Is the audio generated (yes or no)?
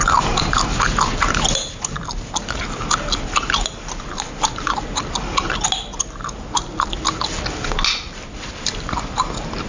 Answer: no